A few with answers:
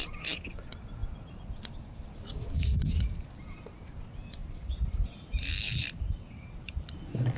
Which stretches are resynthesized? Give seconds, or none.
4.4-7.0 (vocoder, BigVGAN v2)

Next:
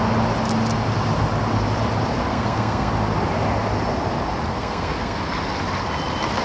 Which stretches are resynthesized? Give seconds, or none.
2.3-2.9 (codec, SNAC); 4.5-5.2

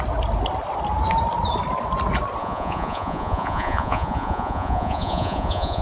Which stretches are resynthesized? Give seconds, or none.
2.4-5.8 (vocoder, Vocos)

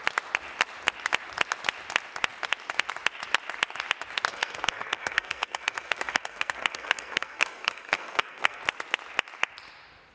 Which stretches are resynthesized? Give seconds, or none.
4.3-8.6 (codec, SNAC)

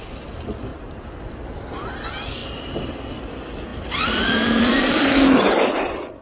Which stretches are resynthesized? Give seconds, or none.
0.0-0.7 (vocoder, BigVGAN v2); 1.2-2.4; 3.3-6.2

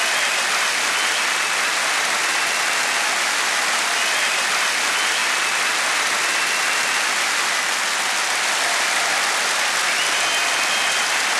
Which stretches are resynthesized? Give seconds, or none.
none